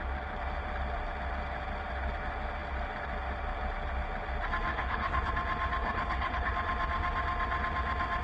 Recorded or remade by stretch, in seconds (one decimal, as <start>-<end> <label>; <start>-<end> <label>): 0.0-4.7 recorded; 4.7-5.3 remade; 5.3-5.8 recorded; 5.8-6.5 remade; 6.5-8.2 recorded